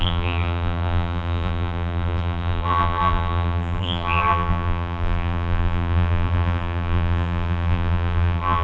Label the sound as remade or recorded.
remade